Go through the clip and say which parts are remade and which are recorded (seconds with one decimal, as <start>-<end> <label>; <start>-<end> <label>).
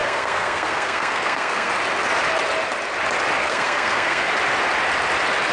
0.0-1.7 remade; 1.7-3.4 recorded; 3.4-4.3 remade; 4.3-5.5 recorded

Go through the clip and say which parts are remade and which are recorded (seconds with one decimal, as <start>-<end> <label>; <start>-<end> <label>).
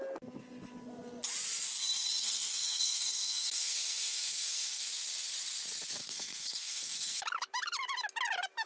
0.0-2.2 recorded; 2.2-4.9 remade; 4.9-6.0 recorded; 6.0-7.2 remade; 7.2-8.7 recorded